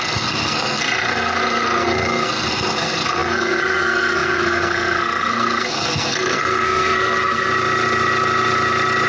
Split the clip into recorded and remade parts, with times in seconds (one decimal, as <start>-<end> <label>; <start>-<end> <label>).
0.0-7.5 remade; 7.5-9.1 recorded